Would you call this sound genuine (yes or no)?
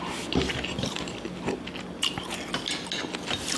yes